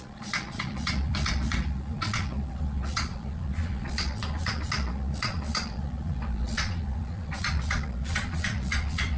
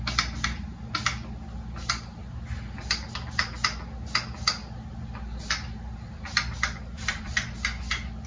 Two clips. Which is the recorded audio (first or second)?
second